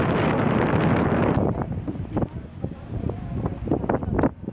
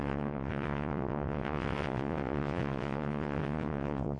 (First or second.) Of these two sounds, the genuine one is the first